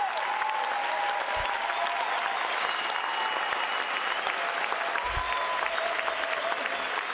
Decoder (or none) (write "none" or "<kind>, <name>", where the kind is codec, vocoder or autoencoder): none